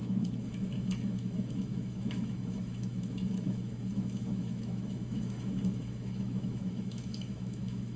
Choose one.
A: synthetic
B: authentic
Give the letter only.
A